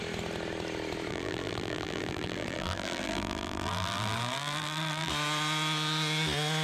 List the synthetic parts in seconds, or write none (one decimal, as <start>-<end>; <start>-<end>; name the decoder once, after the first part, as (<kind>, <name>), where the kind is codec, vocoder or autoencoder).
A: 1.1-5.1 (vocoder, BigVGAN v2)